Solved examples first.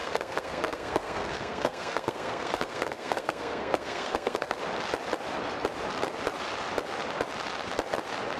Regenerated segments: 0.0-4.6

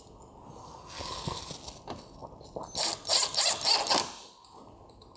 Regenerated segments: 0.6-1.5

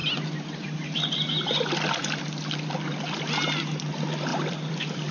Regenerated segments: 4.3-5.1

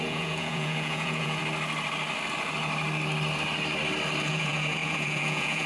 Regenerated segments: 0.0-1.4; 4.3-5.7

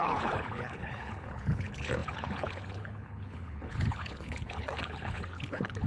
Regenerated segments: 0.0-5.9

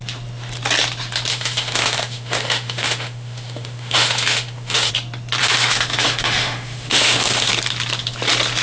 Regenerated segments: 1.3-4.9; 5.4-7.5

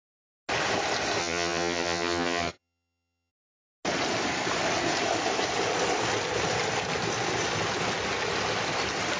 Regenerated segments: 1.2-3.3